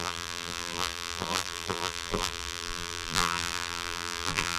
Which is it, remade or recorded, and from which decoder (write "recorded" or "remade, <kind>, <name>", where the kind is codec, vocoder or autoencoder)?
remade, vocoder, BigVGAN v2